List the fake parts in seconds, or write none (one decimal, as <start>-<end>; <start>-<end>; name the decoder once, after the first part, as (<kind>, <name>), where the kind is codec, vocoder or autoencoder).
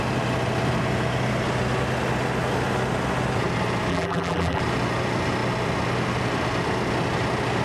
3.9-4.6 (vocoder, BigVGAN v2)